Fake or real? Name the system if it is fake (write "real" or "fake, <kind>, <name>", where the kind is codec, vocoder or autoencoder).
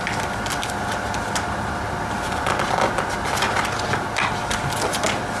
real